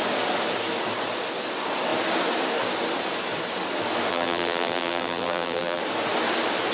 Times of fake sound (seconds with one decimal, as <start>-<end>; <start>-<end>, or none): 4.1-5.8